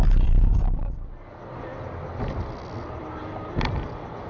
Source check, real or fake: real